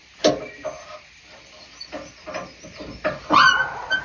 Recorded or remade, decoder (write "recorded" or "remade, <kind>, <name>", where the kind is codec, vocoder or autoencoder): recorded